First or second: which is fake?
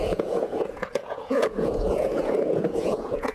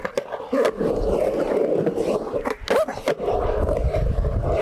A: first